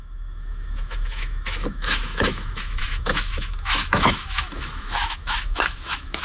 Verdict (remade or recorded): remade